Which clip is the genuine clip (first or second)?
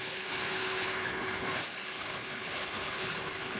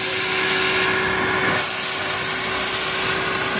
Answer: second